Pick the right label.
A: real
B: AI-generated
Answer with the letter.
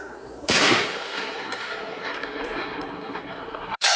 B